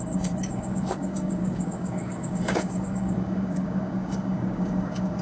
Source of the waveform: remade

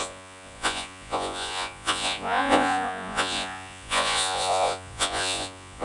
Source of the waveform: remade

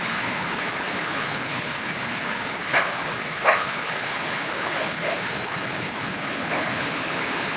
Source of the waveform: remade